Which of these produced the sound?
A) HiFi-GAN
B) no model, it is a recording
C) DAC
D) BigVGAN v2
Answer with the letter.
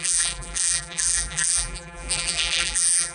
D